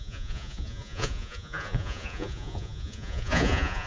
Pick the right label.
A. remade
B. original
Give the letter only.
A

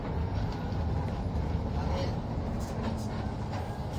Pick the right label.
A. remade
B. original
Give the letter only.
B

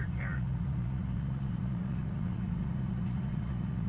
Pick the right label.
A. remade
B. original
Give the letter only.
A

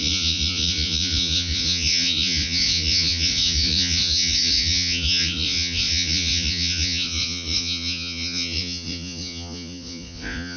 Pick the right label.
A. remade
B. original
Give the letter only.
A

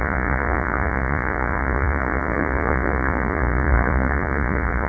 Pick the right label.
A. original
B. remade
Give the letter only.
B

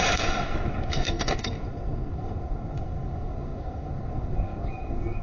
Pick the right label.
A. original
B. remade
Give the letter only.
B